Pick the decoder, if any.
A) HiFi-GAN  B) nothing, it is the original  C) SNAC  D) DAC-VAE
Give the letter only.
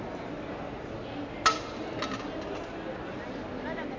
B